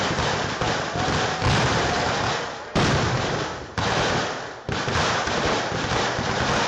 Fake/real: real